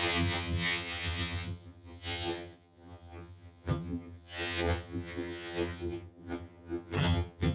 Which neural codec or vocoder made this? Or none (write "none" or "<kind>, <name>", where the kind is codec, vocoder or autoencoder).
vocoder, HiFi-GAN